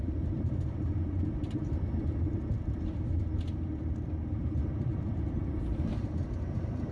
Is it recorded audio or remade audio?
remade